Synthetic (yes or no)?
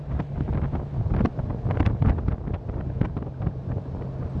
no